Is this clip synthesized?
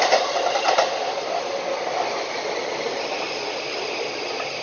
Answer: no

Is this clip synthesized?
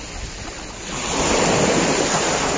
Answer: no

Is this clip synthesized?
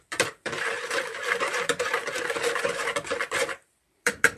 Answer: yes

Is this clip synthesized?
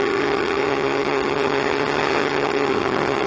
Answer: yes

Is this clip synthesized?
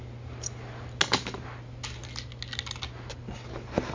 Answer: no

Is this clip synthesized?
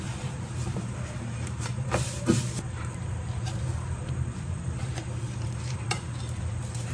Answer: yes